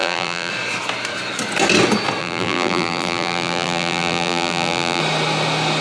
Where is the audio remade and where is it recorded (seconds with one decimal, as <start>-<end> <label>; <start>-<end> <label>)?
0.0-0.5 remade; 0.5-2.2 recorded; 2.2-5.0 remade; 5.0-5.8 recorded